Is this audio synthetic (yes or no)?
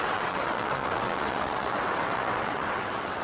yes